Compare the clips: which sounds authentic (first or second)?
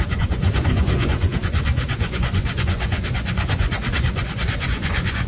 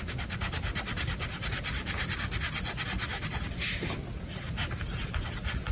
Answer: second